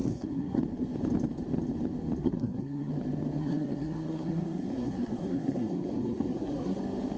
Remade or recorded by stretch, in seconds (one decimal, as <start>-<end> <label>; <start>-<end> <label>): 0.0-0.6 remade; 0.6-2.2 recorded; 2.2-2.9 remade; 2.9-3.4 recorded; 3.4-6.8 remade; 6.8-7.2 recorded